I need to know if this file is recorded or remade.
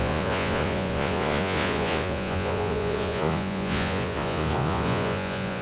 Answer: remade